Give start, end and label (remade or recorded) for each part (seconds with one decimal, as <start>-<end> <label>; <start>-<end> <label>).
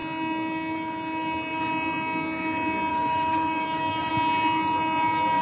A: 0.0-2.9 recorded; 2.9-4.1 remade; 4.1-5.4 recorded